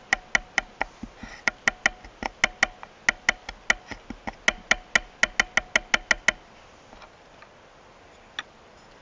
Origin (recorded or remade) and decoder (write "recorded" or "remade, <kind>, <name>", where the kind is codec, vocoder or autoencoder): recorded